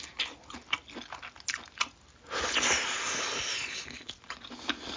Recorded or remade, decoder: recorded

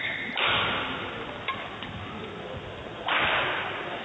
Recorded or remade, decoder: recorded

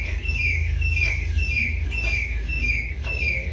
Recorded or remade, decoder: remade, codec, DAC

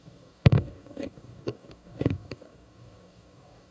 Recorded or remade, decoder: remade, codec, DAC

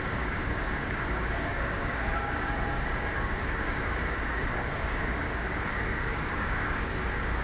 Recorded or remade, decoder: remade, codec, DAC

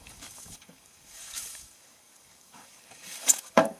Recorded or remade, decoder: remade, codec, DAC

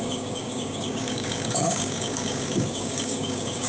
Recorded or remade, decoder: remade, codec, DAC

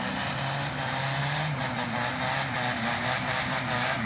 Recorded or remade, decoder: recorded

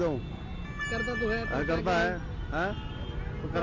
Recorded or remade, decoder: recorded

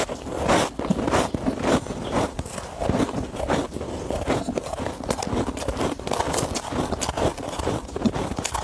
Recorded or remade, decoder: recorded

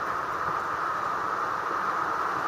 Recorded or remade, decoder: recorded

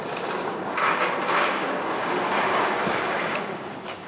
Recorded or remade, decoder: remade, codec, DAC